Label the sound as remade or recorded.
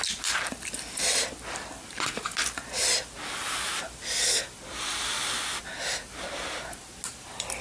recorded